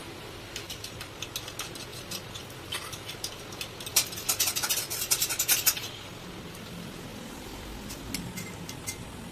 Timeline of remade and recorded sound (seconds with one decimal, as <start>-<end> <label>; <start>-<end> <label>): 0.0-1.9 recorded; 1.9-3.3 remade; 3.3-3.9 recorded; 3.9-5.1 remade; 5.1-7.1 recorded; 7.1-8.0 remade; 8.0-9.3 recorded